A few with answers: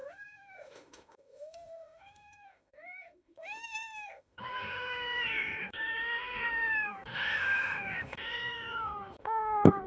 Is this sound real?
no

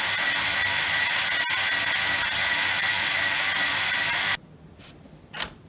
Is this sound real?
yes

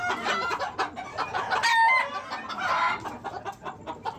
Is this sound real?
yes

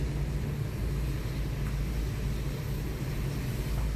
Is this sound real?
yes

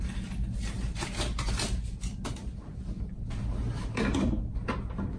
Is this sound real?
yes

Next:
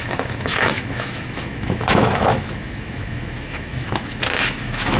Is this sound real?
no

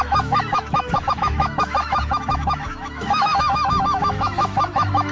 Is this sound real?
no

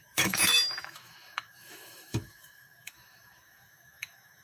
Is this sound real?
no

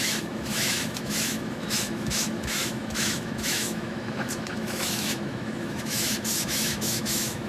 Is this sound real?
no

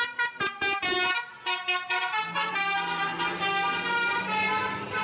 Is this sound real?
yes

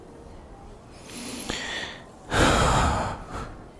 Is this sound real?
yes